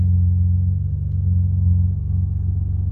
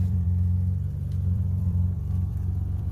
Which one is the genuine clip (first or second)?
first